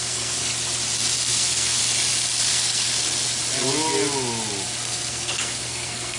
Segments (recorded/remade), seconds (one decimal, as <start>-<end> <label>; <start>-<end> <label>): 0.0-0.5 remade; 0.5-1.3 recorded; 1.3-1.8 remade; 1.8-2.5 recorded; 2.5-2.9 remade; 2.9-4.9 recorded; 4.9-6.2 remade